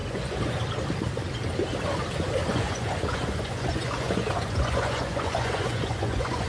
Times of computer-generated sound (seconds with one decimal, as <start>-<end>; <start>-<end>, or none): 0.0-0.6; 2.4-6.5